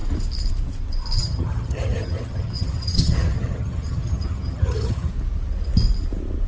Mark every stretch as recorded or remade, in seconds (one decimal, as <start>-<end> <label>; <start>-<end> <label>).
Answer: 0.0-1.2 recorded; 1.2-5.1 remade; 5.1-6.5 recorded